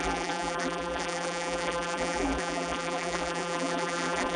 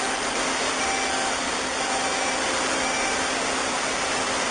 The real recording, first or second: second